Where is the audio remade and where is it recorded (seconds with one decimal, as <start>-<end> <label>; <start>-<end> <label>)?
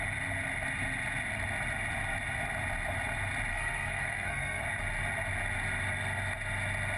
0.0-3.5 recorded; 3.5-4.6 remade; 4.6-7.0 recorded